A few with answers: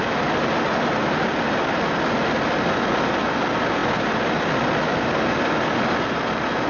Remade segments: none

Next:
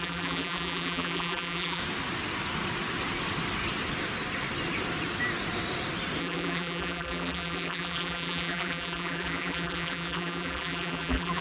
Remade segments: 0.0-1.8; 6.2-11.4

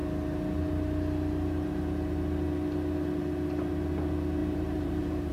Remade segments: 4.4-5.3

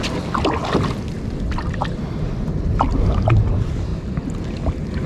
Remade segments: none

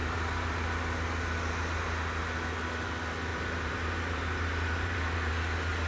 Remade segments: 0.0-0.7; 3.3-5.3